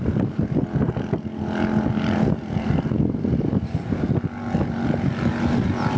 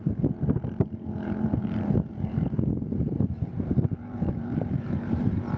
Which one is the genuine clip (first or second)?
first